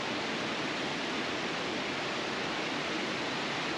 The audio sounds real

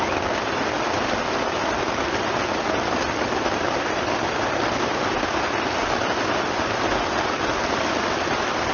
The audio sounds real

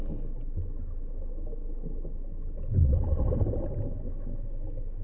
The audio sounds real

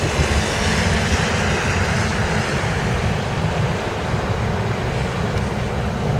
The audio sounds real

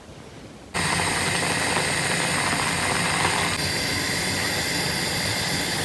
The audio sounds real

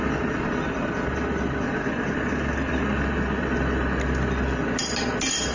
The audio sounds real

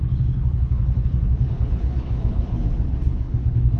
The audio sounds fake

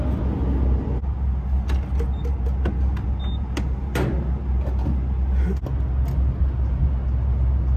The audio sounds real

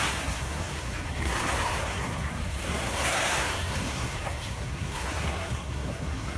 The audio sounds fake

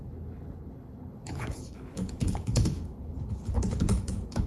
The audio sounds fake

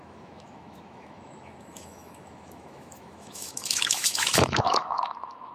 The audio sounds fake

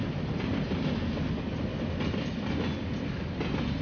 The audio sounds real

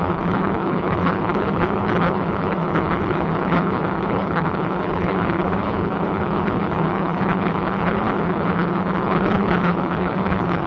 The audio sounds fake